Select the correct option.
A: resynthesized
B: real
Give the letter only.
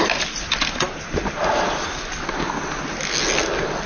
B